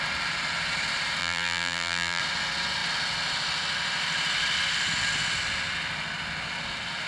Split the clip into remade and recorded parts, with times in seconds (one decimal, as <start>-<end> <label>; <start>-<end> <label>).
0.0-1.2 recorded; 1.2-2.2 remade; 2.2-7.1 recorded